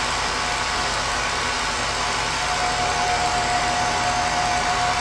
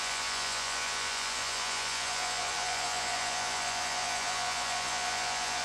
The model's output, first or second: second